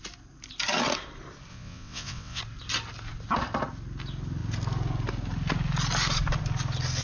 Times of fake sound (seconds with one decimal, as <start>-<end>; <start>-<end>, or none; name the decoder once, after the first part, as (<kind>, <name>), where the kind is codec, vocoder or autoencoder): 1.5-2.4 (vocoder, WaveNeXt)